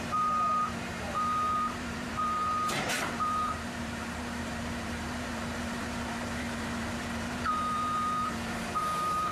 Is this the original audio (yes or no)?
no